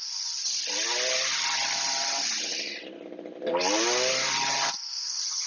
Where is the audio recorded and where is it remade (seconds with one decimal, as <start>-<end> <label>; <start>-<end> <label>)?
0.0-5.5 remade